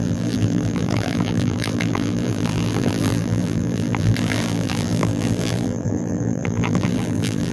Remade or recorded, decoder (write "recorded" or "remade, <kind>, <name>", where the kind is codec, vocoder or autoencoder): remade, vocoder, BigVGAN v2